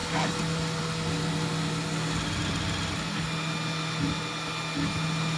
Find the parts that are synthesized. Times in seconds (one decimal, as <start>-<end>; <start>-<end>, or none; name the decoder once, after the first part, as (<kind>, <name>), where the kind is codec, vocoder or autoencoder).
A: none